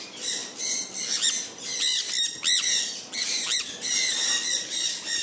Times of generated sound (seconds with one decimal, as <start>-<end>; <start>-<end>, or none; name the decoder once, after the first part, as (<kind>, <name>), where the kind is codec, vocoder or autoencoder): none